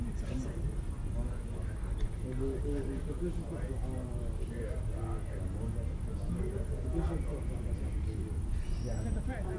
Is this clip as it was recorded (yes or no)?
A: yes